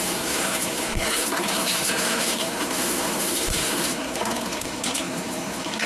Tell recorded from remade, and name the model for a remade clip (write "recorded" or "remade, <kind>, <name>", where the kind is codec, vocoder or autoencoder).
remade, codec, SNAC